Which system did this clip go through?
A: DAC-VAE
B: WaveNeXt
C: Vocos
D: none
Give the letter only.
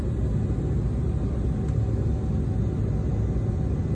D